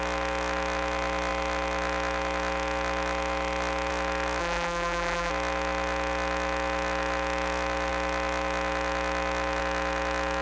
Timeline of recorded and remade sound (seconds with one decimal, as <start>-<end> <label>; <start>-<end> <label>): 0.0-4.4 recorded; 4.4-5.3 remade; 5.3-10.4 recorded